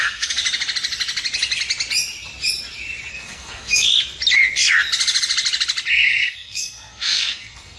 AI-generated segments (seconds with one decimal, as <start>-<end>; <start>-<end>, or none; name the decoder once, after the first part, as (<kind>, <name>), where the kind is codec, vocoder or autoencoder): 0.0-0.4 (codec, SNAC); 3.1-3.9; 5.9-7.8